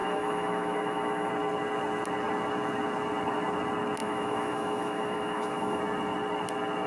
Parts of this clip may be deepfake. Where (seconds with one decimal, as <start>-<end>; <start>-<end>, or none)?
0.0-1.3; 4.0-5.8